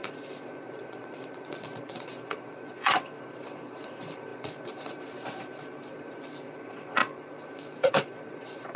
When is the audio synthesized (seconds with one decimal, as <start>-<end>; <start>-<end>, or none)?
0.0-8.8